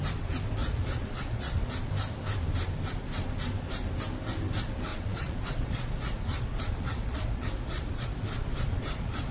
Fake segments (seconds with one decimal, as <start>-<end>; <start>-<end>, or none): 0.6-1.9; 4.9-9.3